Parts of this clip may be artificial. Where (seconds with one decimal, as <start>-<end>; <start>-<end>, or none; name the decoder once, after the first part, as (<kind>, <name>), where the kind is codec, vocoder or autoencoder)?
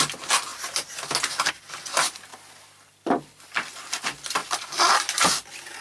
2.3-3.7 (vocoder, BigVGAN v2); 4.4-5.0